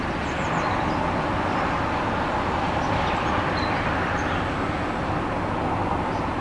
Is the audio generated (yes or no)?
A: no